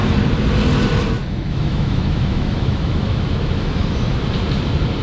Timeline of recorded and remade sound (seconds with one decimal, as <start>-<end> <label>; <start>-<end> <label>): 0.0-1.2 recorded; 1.2-4.2 remade; 4.2-5.0 recorded